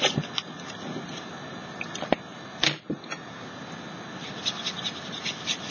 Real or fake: real